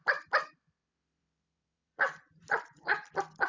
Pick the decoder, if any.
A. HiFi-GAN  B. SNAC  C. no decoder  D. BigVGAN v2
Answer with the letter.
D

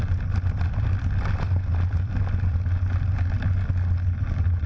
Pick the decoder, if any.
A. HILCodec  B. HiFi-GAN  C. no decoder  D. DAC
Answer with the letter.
C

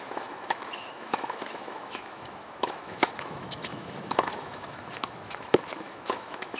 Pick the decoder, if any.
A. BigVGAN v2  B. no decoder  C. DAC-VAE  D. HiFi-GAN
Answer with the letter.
C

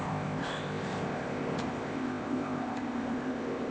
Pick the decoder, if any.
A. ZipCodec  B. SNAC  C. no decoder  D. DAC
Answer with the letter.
A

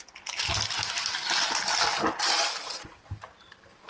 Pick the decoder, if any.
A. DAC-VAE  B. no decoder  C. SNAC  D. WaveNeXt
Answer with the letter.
B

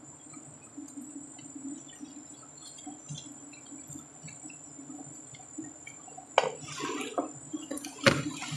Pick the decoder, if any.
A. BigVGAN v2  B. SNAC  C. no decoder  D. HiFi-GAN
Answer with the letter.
C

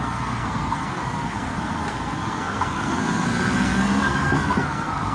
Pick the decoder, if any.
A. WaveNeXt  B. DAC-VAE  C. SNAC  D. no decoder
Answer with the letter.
C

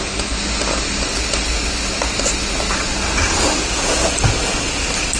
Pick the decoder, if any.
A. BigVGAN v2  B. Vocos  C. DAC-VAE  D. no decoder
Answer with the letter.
D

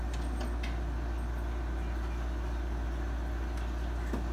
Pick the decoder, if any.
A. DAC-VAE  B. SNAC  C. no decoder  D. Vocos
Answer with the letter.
C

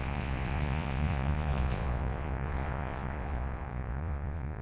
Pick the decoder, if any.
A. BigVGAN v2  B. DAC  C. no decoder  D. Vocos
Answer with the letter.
D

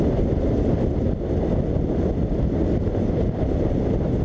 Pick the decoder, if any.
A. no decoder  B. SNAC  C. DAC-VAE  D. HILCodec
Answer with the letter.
A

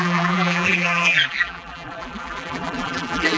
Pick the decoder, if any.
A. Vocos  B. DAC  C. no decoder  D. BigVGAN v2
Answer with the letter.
D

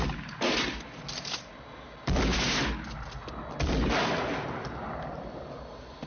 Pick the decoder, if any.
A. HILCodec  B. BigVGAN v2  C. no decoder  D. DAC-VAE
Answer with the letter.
C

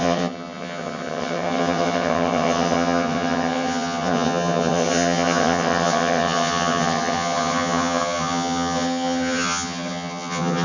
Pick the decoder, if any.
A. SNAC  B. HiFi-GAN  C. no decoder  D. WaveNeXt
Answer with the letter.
B